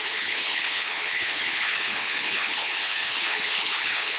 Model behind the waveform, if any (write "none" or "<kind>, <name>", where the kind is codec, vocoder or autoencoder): codec, HILCodec